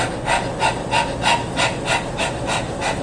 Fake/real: real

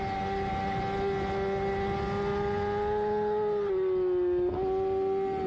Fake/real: real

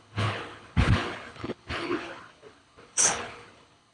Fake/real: fake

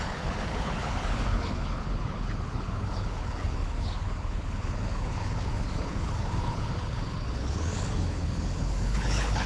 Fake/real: fake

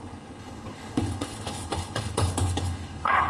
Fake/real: fake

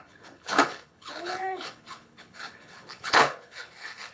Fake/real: fake